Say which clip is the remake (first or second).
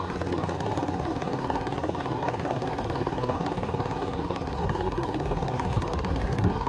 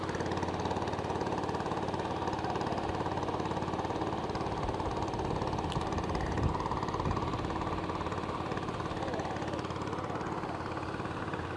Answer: first